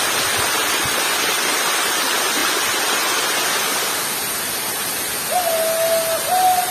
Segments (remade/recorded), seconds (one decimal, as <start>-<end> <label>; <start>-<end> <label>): 0.0-6.7 recorded